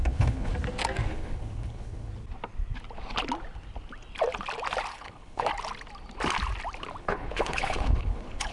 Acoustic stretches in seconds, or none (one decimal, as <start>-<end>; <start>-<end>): 0.5-1.1; 2.1-4.9; 5.5-7.0